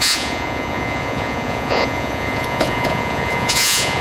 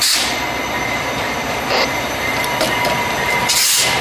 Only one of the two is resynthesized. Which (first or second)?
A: first